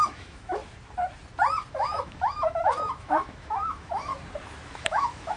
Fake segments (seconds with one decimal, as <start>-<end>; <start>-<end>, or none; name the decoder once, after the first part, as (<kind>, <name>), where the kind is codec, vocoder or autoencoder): 0.0-0.6 (autoencoder, DAC-VAE); 1.7-4.1; 4.7-5.4